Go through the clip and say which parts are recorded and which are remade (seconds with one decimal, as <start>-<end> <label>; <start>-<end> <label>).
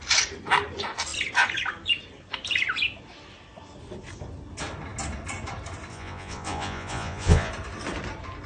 0.0-5.9 recorded; 5.9-7.5 remade; 7.5-8.5 recorded